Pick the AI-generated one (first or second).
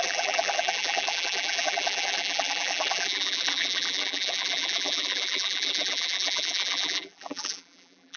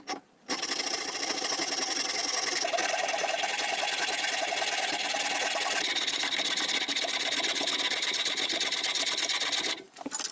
first